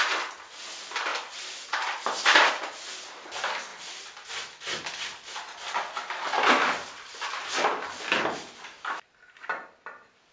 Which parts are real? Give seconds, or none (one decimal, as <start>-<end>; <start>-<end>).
0.0-1.1; 2.5-10.3